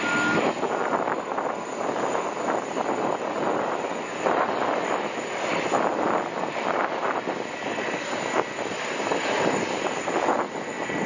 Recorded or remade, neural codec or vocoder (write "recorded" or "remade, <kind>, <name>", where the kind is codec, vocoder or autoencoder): recorded